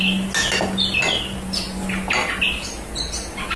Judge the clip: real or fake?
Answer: real